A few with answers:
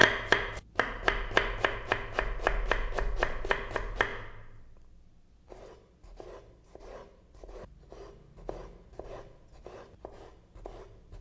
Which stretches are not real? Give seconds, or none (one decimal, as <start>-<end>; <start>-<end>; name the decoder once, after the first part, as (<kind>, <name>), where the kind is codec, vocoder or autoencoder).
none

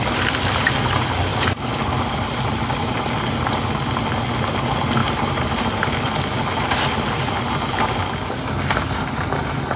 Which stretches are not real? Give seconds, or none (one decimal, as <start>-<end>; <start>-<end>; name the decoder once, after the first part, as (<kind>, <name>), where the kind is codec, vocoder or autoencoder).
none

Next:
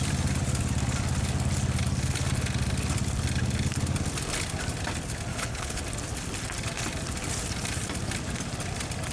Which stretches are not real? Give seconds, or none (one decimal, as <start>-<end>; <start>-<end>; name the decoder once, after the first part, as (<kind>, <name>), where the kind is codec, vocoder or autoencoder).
5.3-5.8 (codec, HILCodec)

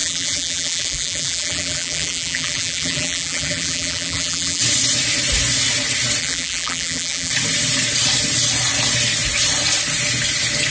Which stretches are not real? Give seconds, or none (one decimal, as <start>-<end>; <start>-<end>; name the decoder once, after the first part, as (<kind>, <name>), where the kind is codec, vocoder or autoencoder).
0.0-4.6 (vocoder, BigVGAN v2); 6.2-7.3

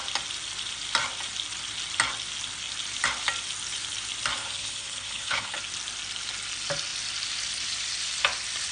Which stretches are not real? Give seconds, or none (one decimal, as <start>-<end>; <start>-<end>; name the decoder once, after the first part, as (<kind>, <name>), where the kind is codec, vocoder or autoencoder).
4.4-5.6 (codec, HILCodec)

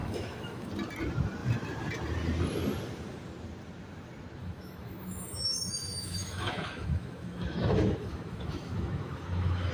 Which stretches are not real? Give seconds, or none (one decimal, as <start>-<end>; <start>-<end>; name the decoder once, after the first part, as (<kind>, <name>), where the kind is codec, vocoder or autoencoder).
0.0-0.7 (autoencoder, DAC-VAE); 4.4-9.7